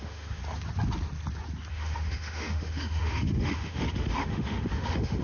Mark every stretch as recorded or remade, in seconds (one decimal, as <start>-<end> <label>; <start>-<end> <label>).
0.0-0.4 remade; 0.4-1.7 recorded; 1.7-5.2 remade